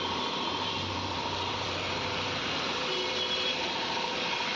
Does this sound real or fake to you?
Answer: fake